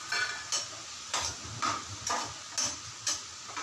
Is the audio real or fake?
real